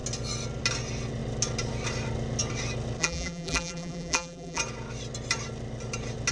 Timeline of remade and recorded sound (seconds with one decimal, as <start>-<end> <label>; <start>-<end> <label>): 0.0-3.0 recorded; 3.0-4.6 remade; 4.6-6.3 recorded